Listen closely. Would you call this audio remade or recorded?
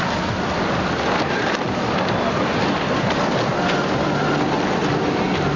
recorded